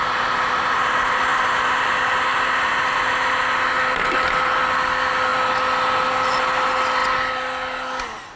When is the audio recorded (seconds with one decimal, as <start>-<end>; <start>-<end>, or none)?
0.0-8.4